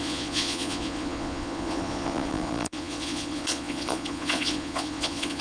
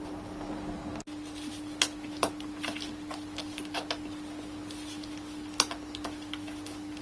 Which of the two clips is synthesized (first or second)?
first